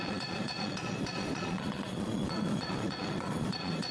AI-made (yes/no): yes